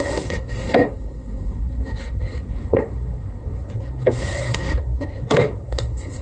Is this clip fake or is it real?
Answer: fake